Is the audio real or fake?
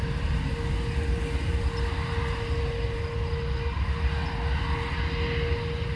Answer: real